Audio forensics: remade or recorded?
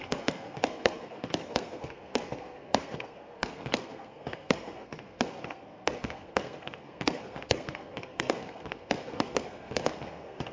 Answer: remade